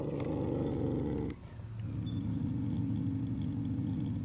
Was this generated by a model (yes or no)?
no